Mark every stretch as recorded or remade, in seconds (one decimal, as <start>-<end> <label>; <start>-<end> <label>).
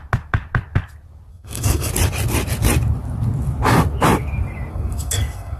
0.0-1.3 recorded; 1.3-1.9 remade; 1.9-4.7 recorded; 4.7-5.6 remade